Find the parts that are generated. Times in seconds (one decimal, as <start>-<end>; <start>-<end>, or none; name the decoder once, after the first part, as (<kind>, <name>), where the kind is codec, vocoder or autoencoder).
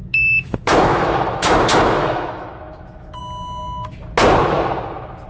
0.0-3.2 (autoencoder, DAC-VAE)